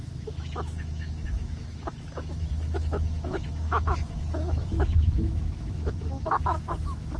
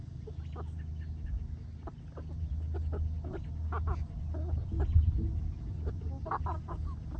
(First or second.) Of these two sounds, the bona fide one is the second